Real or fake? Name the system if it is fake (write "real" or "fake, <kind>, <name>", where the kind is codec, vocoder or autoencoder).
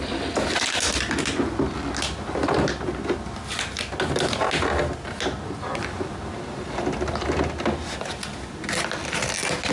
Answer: real